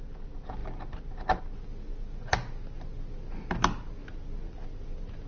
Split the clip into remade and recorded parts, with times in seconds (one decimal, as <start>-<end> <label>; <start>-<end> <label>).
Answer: 0.0-5.3 recorded